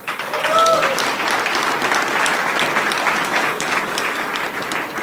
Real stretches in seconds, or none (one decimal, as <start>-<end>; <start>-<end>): 0.8-3.2; 4.3-5.0